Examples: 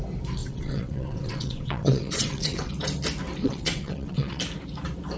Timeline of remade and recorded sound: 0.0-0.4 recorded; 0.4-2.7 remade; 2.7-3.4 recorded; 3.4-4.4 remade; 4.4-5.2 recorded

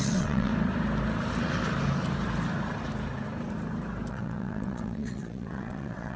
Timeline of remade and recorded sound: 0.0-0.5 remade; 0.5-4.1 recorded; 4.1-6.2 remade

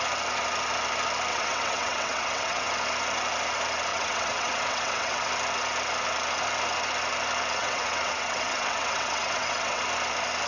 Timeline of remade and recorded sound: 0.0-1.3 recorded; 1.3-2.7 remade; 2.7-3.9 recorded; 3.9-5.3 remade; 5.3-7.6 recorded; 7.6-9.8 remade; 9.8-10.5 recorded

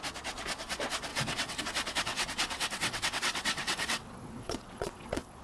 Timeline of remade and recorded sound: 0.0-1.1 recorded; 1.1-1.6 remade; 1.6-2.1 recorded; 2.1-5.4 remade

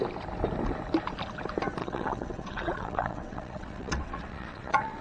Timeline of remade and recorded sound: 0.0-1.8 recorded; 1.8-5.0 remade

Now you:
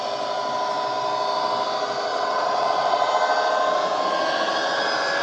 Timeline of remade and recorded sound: 0.0-2.1 recorded; 2.1-3.1 remade; 3.1-5.2 recorded

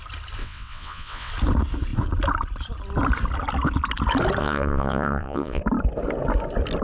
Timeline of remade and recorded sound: 0.0-0.4 recorded; 0.4-1.3 remade; 1.3-4.4 recorded; 4.4-5.6 remade; 5.6-6.8 recorded

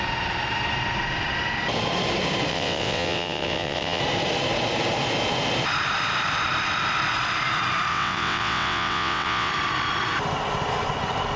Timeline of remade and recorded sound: 0.0-2.5 recorded; 2.5-4.0 remade; 4.0-7.9 recorded; 7.9-9.5 remade; 9.5-11.4 recorded